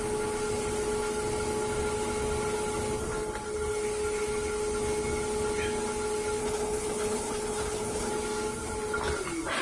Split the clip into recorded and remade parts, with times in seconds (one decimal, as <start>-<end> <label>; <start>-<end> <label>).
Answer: 0.0-6.4 recorded; 6.4-8.1 remade; 8.1-9.6 recorded